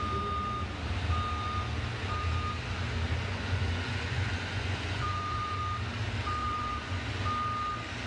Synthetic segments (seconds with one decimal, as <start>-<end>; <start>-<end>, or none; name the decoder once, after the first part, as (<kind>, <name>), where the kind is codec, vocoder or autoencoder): 3.3-5.6 (vocoder, Vocos); 6.4-7.1